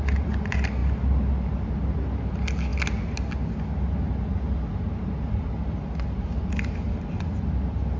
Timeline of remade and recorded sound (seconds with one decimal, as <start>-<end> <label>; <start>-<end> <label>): 0.0-8.0 recorded